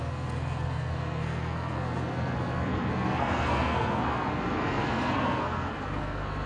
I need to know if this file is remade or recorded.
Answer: remade